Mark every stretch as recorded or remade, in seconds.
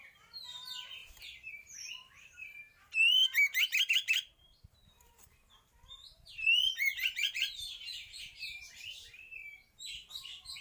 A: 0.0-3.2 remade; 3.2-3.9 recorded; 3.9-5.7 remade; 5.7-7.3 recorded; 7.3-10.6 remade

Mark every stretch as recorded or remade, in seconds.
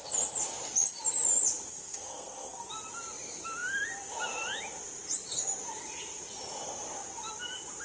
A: 0.0-1.7 recorded; 1.7-2.7 remade; 2.7-7.8 recorded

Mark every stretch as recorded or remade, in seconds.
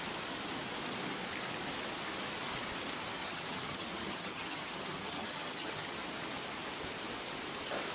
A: 0.0-3.2 recorded; 3.2-5.9 remade; 5.9-7.9 recorded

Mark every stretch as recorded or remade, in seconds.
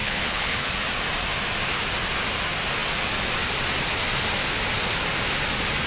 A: 0.0-0.7 remade; 0.7-5.9 recorded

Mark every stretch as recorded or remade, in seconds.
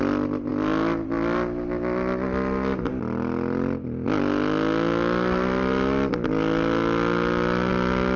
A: 0.0-8.2 recorded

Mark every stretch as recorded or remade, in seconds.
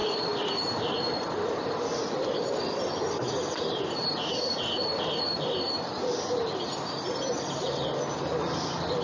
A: 0.0-9.0 recorded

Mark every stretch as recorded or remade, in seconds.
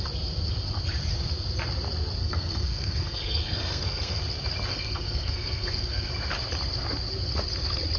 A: 0.0-2.2 recorded; 2.2-4.2 remade; 4.2-4.7 recorded; 4.7-6.1 remade; 6.1-8.0 recorded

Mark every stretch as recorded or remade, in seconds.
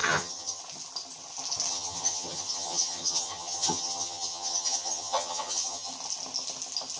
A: 0.0-0.6 remade; 0.6-1.7 recorded; 1.7-5.9 remade; 5.9-7.0 recorded